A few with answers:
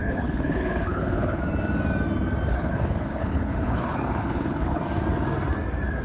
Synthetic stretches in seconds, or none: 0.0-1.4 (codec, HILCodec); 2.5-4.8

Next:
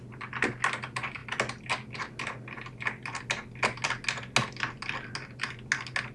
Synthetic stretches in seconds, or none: none

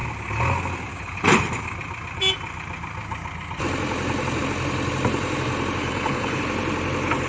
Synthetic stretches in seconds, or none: 5.8-6.4 (codec, HILCodec)

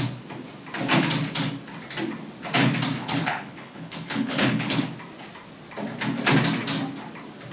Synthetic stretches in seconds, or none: 3.0-4.8 (codec, HILCodec)